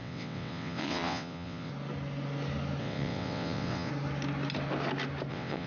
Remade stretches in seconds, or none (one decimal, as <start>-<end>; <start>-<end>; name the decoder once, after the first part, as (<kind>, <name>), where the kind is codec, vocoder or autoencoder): 0.0-1.7 (vocoder, WaveNeXt); 2.8-3.9; 5.3-5.7